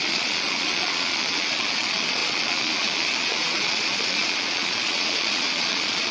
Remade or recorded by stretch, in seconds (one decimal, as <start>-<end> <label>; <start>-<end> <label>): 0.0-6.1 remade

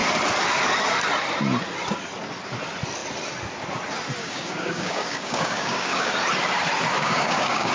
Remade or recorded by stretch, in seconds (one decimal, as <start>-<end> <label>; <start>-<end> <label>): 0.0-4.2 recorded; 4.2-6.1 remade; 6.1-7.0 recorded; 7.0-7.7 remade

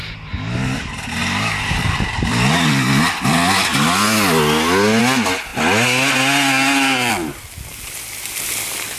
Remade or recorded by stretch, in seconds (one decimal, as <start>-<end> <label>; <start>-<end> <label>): 0.0-1.2 recorded; 1.2-1.8 remade; 1.8-9.0 recorded

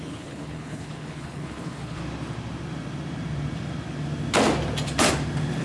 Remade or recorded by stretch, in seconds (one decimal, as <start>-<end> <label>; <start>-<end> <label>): 0.0-2.0 remade; 2.0-5.6 recorded